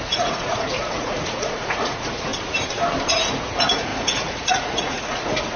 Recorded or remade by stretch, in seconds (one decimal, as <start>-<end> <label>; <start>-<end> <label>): 0.0-2.3 remade; 2.3-3.1 recorded; 3.1-5.6 remade

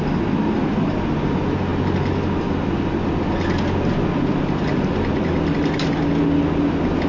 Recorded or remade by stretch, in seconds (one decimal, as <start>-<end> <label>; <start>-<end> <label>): 0.0-7.1 recorded

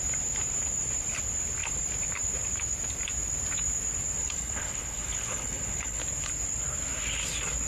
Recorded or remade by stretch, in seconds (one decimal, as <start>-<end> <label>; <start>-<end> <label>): 0.0-4.2 recorded; 4.2-6.0 remade; 6.0-7.7 recorded

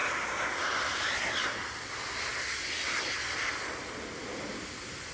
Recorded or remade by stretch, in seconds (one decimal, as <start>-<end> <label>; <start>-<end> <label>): 0.0-2.3 recorded; 2.3-3.5 remade; 3.5-5.1 recorded

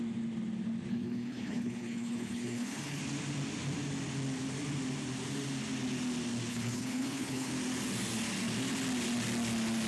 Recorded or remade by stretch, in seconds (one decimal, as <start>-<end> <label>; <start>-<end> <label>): 0.0-0.9 recorded; 0.9-3.0 remade; 3.0-6.5 recorded; 6.5-7.5 remade; 7.5-9.9 recorded